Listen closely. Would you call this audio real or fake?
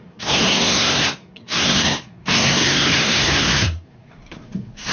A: fake